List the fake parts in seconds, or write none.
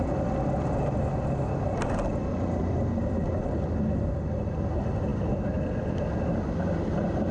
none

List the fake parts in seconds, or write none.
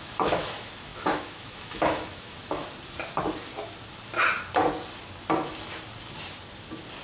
0.0-2.6 (autoencoder, DAC-VAE)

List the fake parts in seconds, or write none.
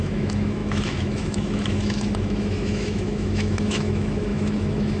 0.0-5.0 (autoencoder, DAC-VAE)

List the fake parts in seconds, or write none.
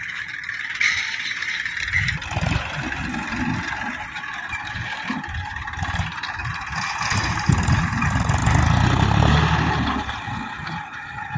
4.4-7.5 (vocoder, BigVGAN v2)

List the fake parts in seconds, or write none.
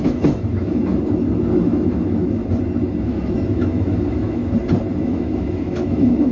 0.0-0.9 (autoencoder, DAC-VAE); 1.7-2.4; 3.0-4.4; 5.0-6.3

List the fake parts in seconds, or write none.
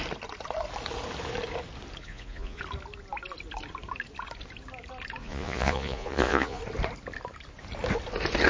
2.0-2.6 (vocoder, Vocos); 5.2-6.6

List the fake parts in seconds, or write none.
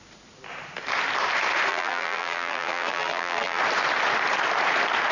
1.7-3.6 (vocoder, BigVGAN v2)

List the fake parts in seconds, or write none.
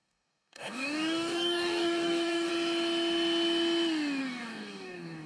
0.0-2.5 (codec, DAC); 4.2-5.3